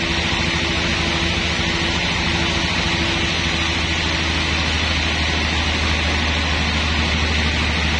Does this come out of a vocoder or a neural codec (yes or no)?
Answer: no